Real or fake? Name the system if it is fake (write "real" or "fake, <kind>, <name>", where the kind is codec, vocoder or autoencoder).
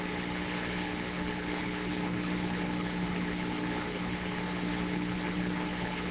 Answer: fake, codec, HILCodec